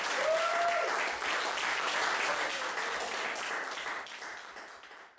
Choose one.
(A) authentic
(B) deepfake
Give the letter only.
A